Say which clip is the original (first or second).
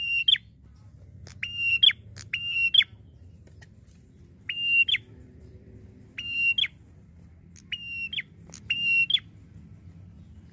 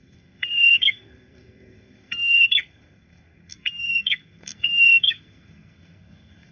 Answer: first